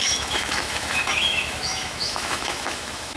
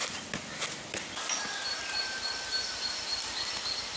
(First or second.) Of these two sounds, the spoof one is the first